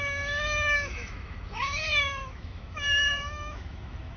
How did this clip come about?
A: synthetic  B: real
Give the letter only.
A